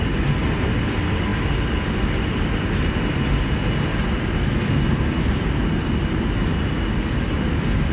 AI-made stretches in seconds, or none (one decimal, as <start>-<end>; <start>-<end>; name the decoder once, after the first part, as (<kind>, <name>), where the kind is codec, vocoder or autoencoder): none